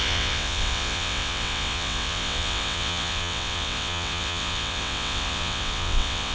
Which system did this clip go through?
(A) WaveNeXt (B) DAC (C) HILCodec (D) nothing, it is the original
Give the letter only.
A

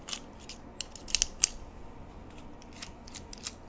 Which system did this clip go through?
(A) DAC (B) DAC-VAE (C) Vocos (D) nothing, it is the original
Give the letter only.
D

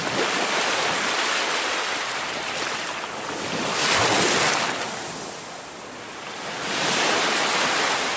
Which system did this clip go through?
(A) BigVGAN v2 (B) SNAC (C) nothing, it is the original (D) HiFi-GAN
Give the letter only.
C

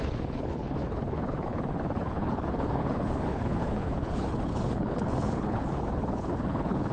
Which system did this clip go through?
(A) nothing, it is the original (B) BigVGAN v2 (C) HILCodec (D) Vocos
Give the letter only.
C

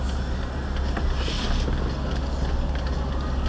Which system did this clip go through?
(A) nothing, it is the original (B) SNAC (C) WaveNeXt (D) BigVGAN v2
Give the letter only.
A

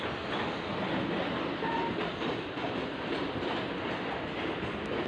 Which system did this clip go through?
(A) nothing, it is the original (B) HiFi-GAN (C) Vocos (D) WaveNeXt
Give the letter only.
A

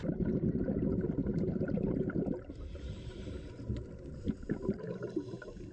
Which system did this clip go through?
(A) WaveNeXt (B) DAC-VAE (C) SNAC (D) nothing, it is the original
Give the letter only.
D